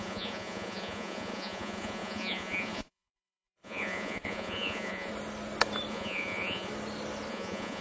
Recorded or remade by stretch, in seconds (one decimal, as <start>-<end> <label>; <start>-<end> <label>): 0.0-5.1 remade; 5.1-5.9 recorded; 5.9-6.7 remade; 6.7-7.3 recorded; 7.3-7.8 remade